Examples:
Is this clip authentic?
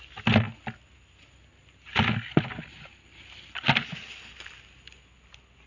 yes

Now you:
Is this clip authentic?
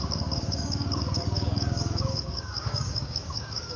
no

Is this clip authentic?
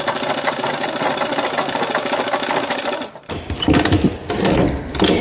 yes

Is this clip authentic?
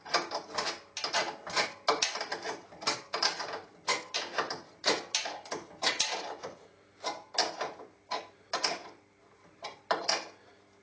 yes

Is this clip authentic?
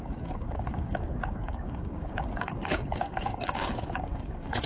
no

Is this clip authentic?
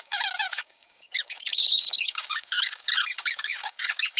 no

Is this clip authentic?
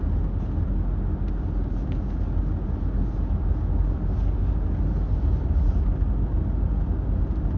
yes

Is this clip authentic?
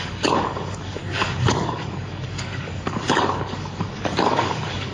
no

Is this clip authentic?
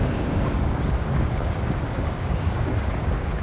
no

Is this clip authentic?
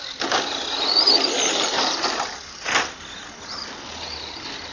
yes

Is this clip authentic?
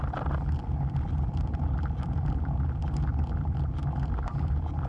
yes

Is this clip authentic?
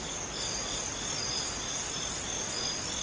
yes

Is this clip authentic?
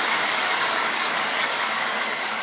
no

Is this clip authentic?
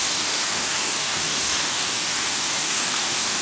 no